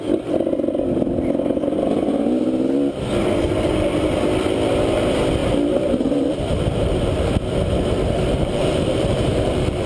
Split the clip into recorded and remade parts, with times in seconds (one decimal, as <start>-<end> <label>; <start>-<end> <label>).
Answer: 0.0-5.4 recorded; 5.4-9.9 remade